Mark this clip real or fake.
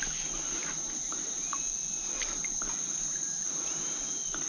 real